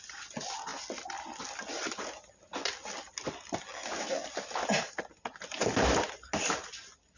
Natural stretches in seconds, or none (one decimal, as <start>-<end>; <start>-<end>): 0.0-7.2